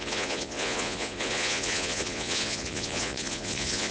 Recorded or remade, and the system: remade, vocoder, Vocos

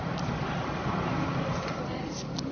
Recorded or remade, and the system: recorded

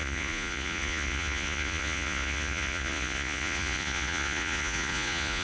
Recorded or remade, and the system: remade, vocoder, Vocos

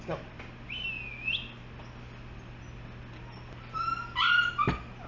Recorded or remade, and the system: recorded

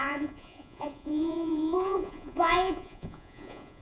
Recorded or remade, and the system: remade, vocoder, Vocos